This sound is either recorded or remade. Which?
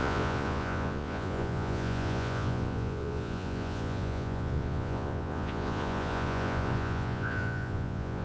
remade